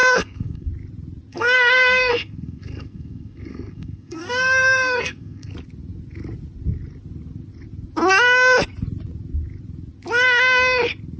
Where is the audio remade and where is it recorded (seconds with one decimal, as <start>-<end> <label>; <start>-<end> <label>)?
0.0-0.7 remade; 0.7-1.3 recorded; 1.3-5.5 remade; 5.5-11.2 recorded